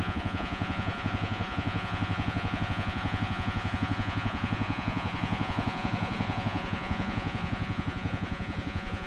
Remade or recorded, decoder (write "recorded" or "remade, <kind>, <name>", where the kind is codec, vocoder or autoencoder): remade, vocoder, Vocos